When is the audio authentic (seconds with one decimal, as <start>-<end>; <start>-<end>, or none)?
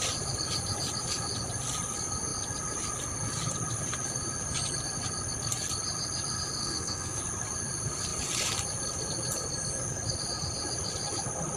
0.0-6.6; 7.2-11.6